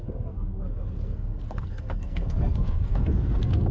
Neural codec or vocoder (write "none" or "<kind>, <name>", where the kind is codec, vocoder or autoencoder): codec, SNAC